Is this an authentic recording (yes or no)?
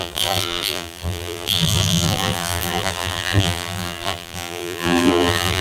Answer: no